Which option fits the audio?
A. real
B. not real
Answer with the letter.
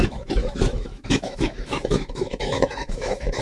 B